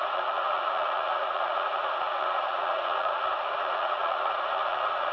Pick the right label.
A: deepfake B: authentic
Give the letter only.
A